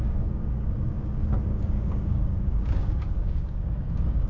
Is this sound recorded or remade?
remade